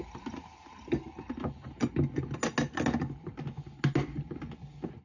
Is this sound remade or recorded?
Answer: recorded